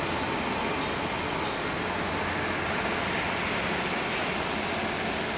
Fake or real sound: real